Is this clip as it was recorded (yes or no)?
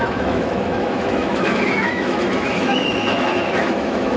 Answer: no